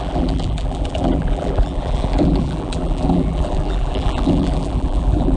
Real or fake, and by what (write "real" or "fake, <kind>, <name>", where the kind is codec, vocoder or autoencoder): fake, vocoder, BigVGAN v2